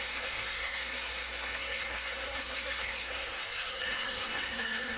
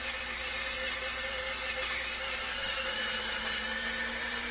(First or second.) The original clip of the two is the second